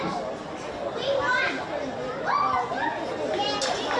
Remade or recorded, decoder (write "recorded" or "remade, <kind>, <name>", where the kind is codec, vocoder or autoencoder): recorded